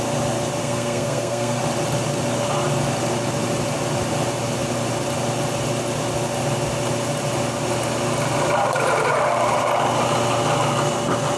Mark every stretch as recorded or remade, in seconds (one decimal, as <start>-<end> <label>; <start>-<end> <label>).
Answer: 0.0-0.6 recorded; 0.6-1.6 remade; 1.6-11.4 recorded